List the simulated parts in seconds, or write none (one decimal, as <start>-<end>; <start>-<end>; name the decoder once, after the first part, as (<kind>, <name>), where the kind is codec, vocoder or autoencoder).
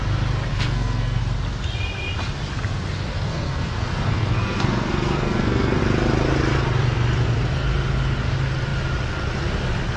0.5-1.2 (codec, SNAC); 3.1-5.8